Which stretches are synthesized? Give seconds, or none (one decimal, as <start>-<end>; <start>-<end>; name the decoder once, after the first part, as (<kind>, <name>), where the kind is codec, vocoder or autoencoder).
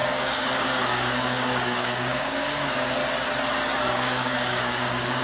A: 0.0-3.0 (codec, DAC); 3.8-5.2